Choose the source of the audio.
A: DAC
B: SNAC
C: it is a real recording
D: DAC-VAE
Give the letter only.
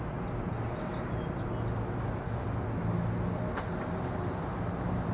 C